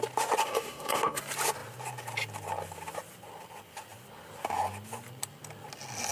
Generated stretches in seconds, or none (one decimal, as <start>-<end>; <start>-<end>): 0.4-1.2